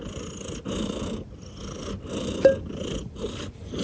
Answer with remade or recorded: recorded